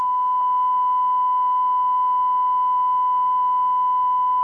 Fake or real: real